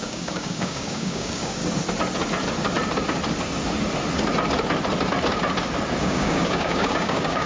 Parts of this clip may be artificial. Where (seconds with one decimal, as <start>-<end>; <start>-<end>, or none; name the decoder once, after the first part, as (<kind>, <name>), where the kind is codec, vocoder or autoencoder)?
0.0-1.6 (codec, DAC); 6.0-7.5